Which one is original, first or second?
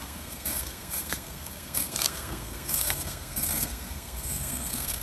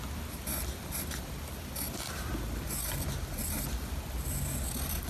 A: second